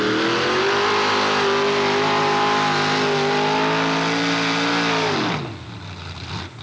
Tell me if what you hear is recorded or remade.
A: recorded